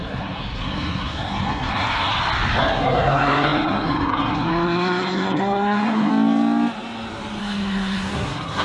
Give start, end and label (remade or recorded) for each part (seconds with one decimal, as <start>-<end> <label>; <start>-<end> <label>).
0.0-2.1 remade; 2.1-2.6 recorded; 2.6-6.1 remade; 6.1-7.4 recorded; 7.4-8.6 remade